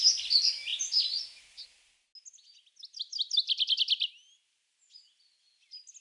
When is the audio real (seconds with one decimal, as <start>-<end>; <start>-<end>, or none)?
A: 0.0-6.0